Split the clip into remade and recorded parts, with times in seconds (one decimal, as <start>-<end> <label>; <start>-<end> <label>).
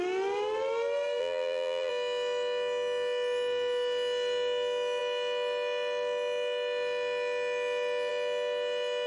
0.0-1.2 recorded; 1.2-1.9 remade; 1.9-9.1 recorded